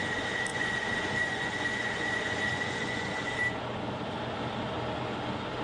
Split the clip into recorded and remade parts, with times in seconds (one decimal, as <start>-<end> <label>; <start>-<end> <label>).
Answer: 0.0-0.5 recorded; 0.5-3.4 remade; 3.4-5.6 recorded